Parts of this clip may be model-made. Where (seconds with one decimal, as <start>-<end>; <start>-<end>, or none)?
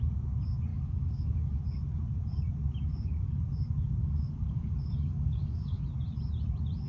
0.7-1.6; 2.9-3.4; 4.0-5.8